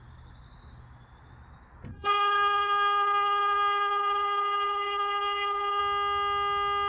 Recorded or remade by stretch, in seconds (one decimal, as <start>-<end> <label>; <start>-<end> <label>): 0.0-1.9 recorded; 1.9-5.8 remade; 5.8-6.9 recorded